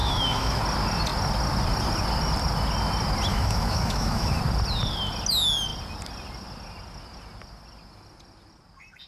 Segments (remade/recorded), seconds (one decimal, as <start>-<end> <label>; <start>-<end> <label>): 0.0-0.6 remade; 0.6-3.3 recorded; 3.3-4.4 remade; 4.4-9.1 recorded